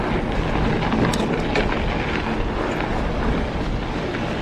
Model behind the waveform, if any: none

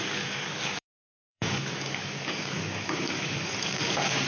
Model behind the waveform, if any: codec, DAC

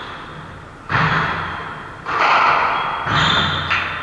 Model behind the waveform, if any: none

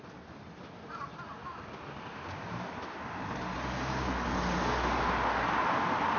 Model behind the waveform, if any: none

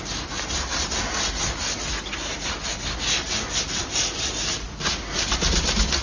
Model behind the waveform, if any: none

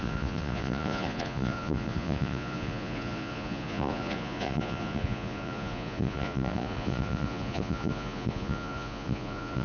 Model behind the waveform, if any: vocoder, Vocos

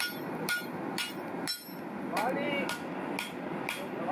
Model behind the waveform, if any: none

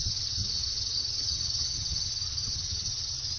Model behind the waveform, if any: vocoder, HiFi-GAN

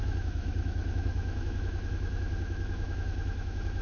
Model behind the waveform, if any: autoencoder, DAC-VAE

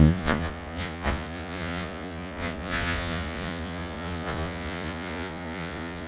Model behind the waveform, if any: vocoder, Vocos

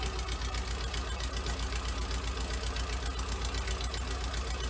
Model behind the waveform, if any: none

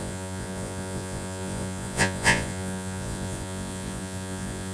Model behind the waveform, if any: vocoder, Vocos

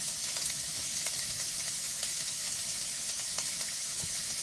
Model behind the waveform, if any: autoencoder, DAC-VAE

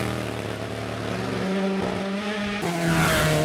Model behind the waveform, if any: none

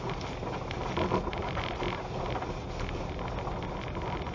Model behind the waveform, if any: none